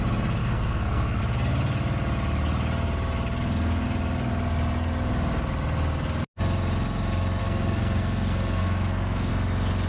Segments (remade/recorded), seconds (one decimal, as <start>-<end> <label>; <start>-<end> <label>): 0.0-0.4 recorded; 0.4-1.2 remade; 1.2-7.4 recorded; 7.4-9.3 remade; 9.3-9.9 recorded